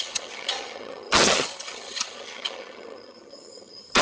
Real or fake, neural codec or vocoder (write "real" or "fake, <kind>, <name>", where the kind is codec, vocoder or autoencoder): fake, vocoder, HiFi-GAN